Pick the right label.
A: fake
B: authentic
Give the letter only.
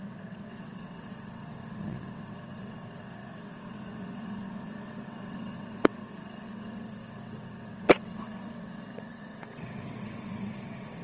A